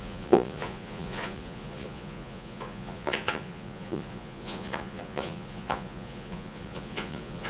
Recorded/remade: remade